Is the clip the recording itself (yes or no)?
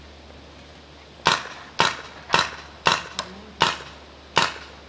yes